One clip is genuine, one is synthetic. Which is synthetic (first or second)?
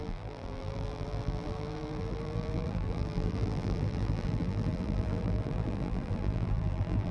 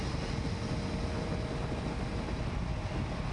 first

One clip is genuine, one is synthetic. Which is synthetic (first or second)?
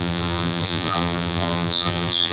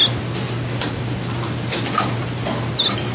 first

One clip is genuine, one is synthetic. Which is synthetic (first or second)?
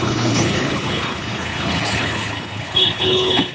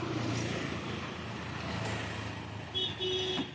first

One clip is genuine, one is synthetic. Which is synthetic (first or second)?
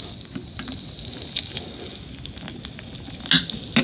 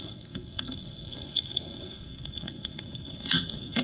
second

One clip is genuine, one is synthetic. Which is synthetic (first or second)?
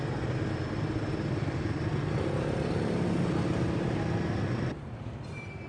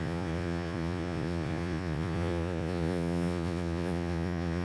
second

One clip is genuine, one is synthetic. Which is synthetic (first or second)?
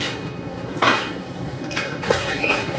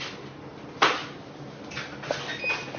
first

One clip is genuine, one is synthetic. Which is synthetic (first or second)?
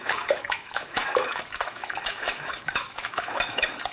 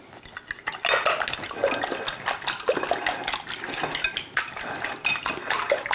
first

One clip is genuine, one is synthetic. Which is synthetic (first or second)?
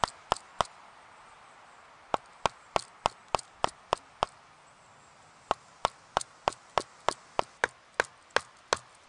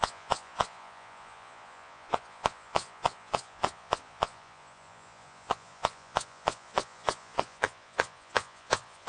second